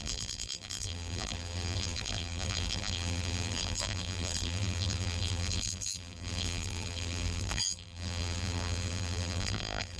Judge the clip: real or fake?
fake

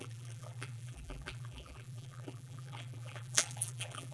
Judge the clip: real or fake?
fake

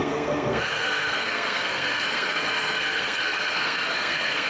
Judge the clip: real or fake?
fake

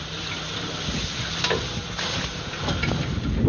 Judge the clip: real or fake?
real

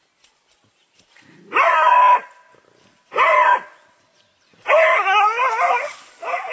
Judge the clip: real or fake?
real